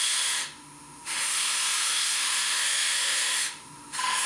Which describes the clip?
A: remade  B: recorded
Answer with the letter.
A